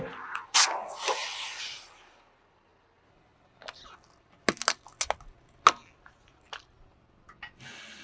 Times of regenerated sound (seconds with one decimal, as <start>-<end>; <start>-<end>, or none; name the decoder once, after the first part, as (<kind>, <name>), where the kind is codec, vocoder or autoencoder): none